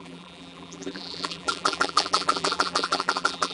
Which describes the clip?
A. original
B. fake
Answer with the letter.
B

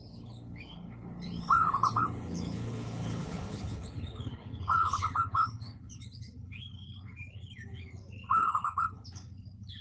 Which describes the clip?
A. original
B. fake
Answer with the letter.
B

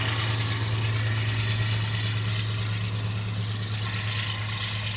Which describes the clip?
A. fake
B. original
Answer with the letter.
B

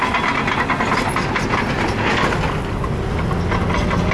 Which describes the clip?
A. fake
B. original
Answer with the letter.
B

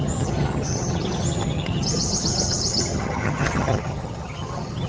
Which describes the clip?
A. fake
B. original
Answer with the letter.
A